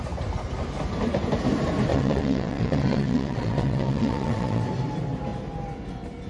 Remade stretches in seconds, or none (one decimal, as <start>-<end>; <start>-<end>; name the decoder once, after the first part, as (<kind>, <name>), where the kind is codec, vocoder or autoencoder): 1.9-4.6 (vocoder, WaveNeXt)